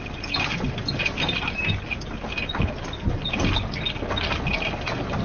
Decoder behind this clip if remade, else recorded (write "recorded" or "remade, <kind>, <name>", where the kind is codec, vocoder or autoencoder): recorded